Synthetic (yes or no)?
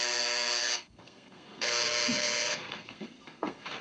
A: yes